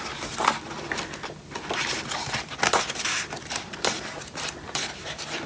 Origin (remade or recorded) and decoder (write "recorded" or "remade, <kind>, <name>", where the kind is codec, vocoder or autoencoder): remade, vocoder, BigVGAN v2